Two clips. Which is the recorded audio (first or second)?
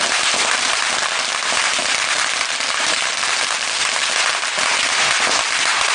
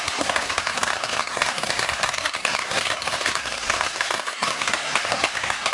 first